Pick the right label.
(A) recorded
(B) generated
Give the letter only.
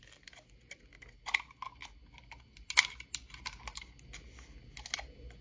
A